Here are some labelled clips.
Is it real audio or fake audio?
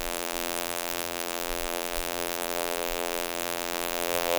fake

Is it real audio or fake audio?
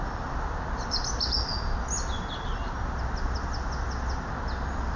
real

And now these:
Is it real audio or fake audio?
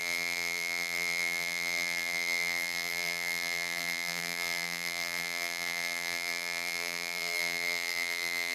fake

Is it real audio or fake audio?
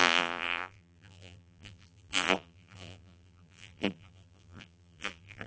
fake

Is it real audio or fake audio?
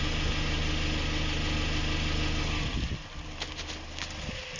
real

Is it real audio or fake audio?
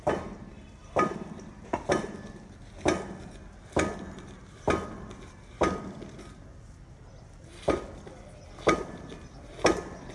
real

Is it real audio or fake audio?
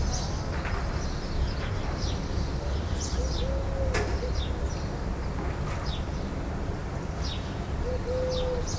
real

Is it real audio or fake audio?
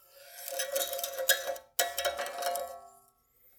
real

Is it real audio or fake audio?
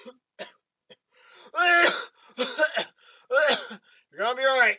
real